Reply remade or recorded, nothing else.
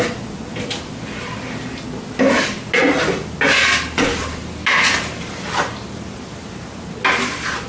recorded